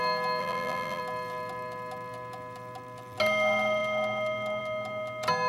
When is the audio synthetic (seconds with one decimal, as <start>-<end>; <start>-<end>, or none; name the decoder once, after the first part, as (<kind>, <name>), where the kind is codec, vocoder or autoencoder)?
0.4-1.0 (vocoder, BigVGAN v2)